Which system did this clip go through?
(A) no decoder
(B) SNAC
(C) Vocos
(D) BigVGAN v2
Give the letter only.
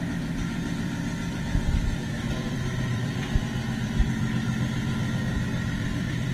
D